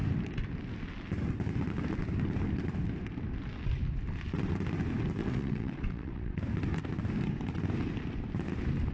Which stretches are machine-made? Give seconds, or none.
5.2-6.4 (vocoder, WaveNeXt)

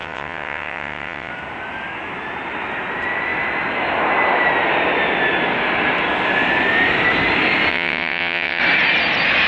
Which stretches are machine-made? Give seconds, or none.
0.0-1.3 (vocoder, WaveNeXt); 7.7-8.6